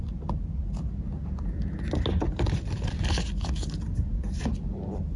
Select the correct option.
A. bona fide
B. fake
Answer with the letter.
A